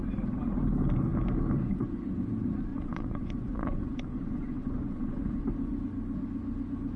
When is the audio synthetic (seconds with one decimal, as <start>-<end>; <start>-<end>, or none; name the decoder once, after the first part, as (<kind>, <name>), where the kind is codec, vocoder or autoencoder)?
2.7-5.4 (vocoder, Vocos)